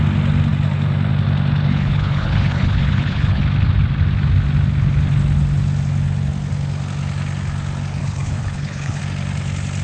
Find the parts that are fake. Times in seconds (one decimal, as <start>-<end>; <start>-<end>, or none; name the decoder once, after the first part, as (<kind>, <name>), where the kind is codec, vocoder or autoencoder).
1.7-3.4 (codec, HILCodec); 8.0-9.0